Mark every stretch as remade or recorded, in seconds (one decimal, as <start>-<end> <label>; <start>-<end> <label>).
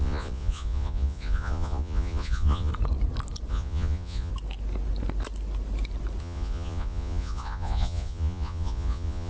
0.0-2.7 remade; 2.7-3.5 recorded; 3.5-4.3 remade; 4.3-6.2 recorded; 6.2-9.3 remade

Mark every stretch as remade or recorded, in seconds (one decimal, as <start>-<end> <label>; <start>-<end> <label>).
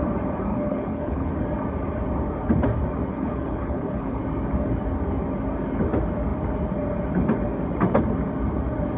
0.0-0.5 recorded; 0.5-1.3 remade; 1.3-3.1 recorded; 3.1-4.2 remade; 4.2-9.0 recorded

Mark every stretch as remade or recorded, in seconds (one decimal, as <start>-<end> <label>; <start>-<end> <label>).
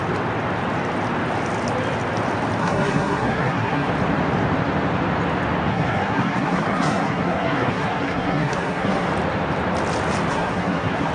0.0-2.6 recorded; 2.6-3.9 remade; 3.9-5.7 recorded; 5.7-9.1 remade; 9.1-10.3 recorded; 10.3-11.1 remade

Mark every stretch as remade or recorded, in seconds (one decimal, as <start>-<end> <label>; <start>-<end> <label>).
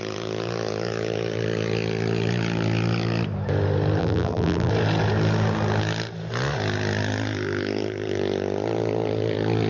0.0-4.0 recorded; 4.0-4.7 remade; 4.7-9.7 recorded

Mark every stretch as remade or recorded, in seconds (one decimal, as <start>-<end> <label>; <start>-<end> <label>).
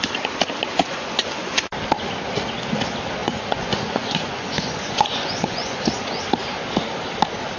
0.0-0.8 recorded; 0.8-1.7 remade; 1.7-3.2 recorded; 3.2-6.2 remade; 6.2-7.6 recorded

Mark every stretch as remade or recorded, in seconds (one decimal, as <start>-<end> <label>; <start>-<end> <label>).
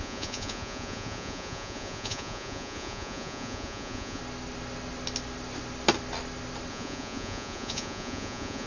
0.0-4.2 remade; 4.2-6.7 recorded; 6.7-8.7 remade